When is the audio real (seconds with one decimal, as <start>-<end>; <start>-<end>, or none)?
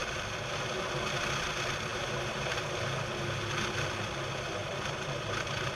0.0-1.9; 2.9-4.6